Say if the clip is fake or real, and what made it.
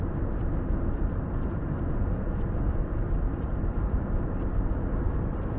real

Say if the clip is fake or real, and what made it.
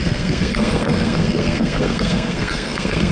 fake, codec, SNAC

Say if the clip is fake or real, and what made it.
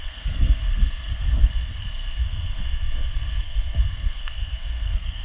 fake, codec, SNAC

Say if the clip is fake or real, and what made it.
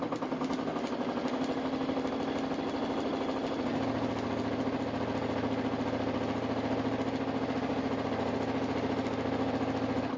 real